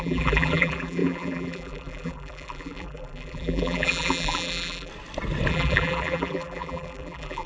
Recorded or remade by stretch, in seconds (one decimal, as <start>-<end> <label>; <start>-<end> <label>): 0.0-4.9 remade; 4.9-5.5 recorded; 5.5-7.5 remade